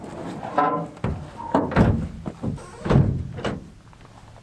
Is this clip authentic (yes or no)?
yes